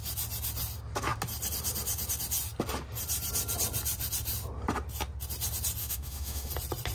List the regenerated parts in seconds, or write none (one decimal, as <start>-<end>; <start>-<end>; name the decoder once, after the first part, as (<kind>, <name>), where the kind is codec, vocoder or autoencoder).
5.8-6.5 (autoencoder, DAC-VAE)